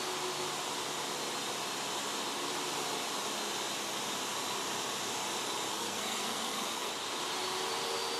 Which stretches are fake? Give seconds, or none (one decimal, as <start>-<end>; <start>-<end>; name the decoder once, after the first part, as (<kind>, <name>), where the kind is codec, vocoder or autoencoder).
5.7-6.9 (codec, SNAC)